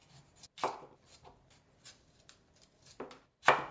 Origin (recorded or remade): recorded